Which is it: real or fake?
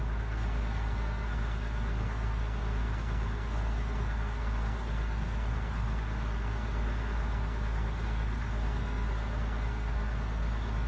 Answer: fake